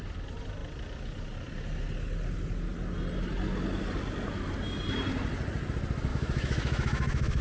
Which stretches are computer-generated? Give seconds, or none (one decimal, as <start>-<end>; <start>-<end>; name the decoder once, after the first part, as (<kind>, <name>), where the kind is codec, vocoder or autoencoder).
6.1-7.4 (autoencoder, DAC-VAE)